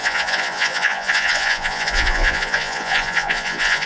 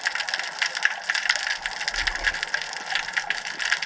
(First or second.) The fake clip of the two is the first